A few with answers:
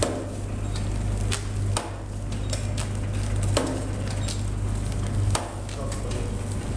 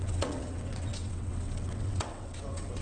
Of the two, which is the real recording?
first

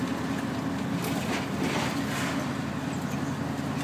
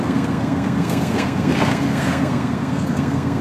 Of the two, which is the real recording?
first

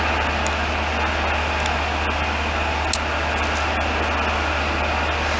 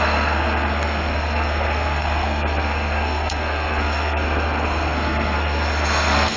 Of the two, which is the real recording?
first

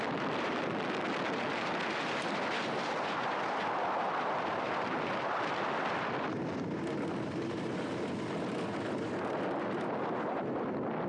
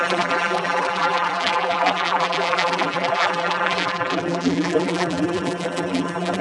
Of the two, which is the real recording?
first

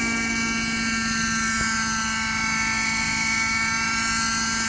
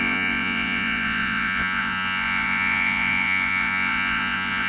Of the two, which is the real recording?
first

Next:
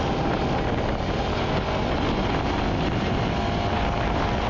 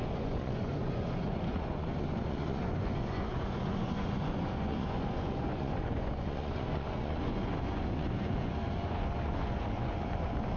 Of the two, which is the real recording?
first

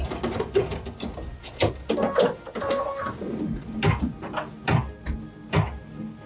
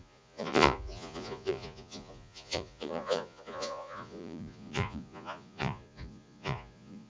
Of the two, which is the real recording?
first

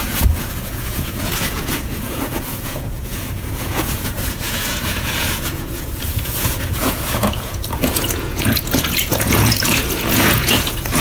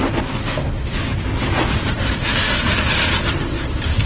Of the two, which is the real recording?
second